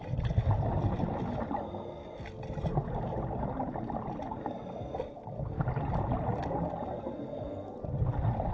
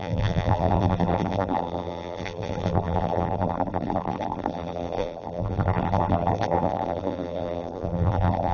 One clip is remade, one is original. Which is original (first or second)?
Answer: first